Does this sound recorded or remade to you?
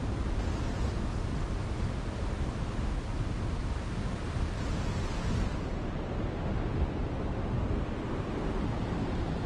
recorded